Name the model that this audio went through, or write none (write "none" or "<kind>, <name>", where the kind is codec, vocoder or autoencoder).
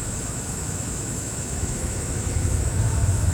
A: autoencoder, DAC-VAE